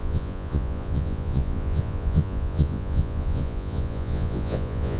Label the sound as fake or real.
fake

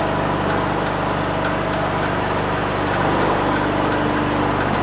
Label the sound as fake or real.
real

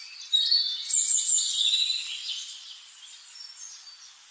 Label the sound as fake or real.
real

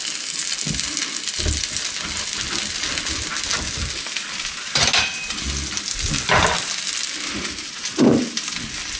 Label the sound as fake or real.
real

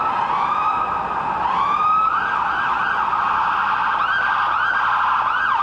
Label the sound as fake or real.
real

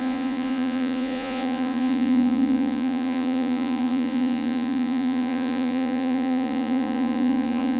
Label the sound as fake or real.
fake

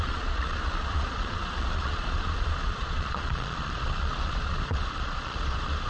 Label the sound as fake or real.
fake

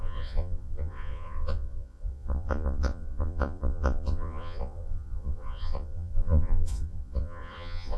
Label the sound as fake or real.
fake